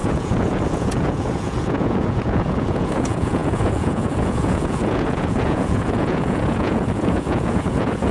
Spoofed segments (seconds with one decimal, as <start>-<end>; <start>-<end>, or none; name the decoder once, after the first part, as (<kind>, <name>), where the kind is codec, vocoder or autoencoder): 0.0-8.1 (vocoder, Vocos)

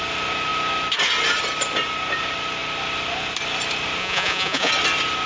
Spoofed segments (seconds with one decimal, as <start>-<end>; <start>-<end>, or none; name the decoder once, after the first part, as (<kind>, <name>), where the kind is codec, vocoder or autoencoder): 4.0-4.7 (vocoder, Vocos)

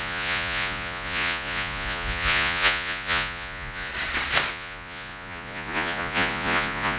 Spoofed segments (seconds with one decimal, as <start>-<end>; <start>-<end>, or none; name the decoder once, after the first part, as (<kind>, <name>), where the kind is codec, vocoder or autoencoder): 0.0-3.9 (vocoder, Vocos); 4.5-7.0

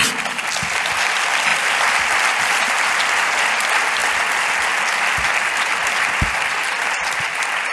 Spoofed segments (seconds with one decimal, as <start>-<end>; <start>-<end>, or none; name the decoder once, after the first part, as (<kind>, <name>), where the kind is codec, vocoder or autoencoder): none